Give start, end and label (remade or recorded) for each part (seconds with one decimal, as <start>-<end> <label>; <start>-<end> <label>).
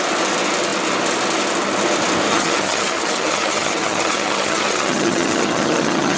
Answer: 0.0-2.3 recorded; 2.3-6.2 remade